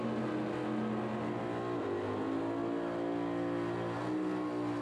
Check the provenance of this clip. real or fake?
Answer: real